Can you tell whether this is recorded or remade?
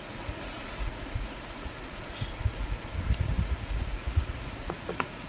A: remade